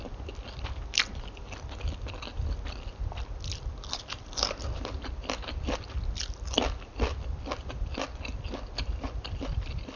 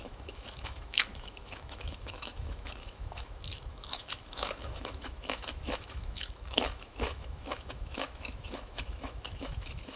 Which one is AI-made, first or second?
second